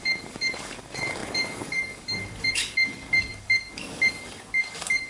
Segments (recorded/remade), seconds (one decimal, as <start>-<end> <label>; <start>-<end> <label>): 0.0-5.1 remade